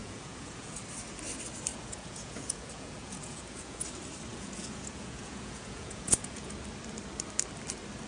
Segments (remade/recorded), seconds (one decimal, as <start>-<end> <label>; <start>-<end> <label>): 0.0-0.8 remade; 0.8-1.7 recorded; 1.7-3.8 remade; 3.8-4.3 recorded; 4.3-6.5 remade; 6.5-8.1 recorded